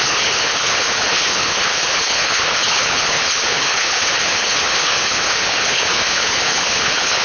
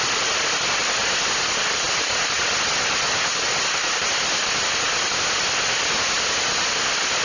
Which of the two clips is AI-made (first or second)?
first